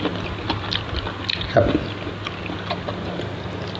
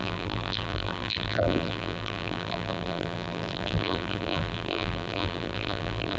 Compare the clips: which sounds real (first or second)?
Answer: first